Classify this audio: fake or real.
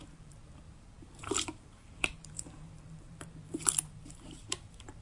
fake